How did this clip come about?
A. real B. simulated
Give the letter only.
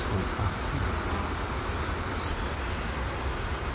A